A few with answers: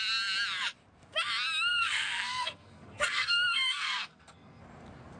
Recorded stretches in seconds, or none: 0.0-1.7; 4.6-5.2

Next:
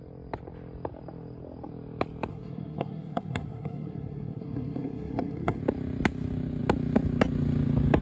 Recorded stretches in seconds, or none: 0.0-2.3; 5.6-8.0

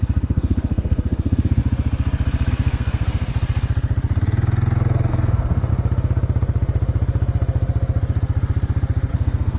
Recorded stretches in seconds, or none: 1.6-2.5; 3.3-5.1; 5.7-9.1